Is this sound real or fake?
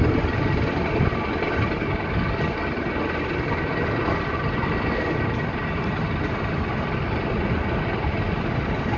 real